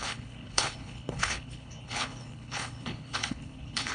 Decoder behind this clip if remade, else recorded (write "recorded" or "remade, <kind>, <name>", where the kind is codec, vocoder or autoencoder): remade, codec, HILCodec